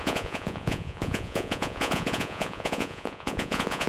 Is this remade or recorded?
remade